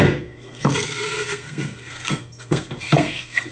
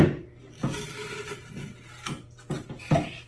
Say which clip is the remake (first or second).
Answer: first